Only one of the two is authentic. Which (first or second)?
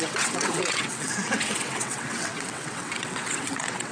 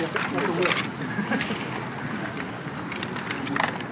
second